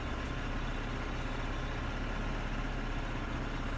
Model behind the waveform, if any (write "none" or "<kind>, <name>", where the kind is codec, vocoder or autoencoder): none